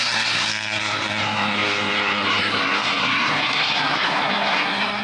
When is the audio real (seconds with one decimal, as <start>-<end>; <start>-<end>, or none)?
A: none